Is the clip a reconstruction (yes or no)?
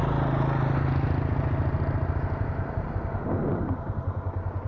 no